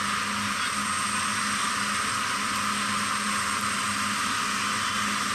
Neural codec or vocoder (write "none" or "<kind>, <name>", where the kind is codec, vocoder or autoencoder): none